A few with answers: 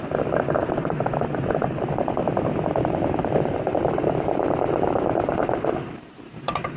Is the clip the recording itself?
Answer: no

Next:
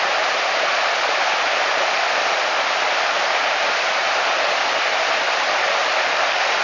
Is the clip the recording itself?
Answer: yes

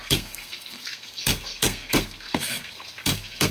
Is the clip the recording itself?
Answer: no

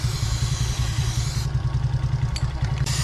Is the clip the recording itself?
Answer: no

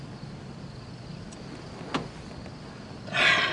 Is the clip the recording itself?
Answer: yes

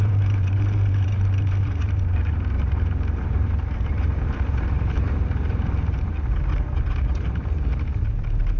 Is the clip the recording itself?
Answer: no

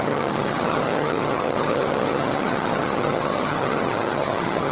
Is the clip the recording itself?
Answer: no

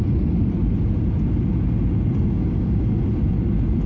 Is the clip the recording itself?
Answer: yes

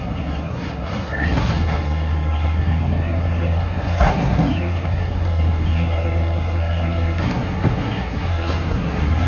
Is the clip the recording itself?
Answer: no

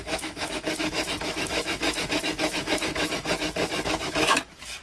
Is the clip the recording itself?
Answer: no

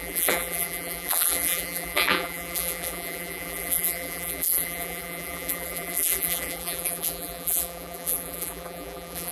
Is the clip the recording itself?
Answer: no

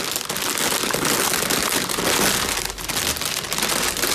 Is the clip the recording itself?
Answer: yes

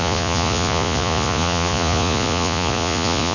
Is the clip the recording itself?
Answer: no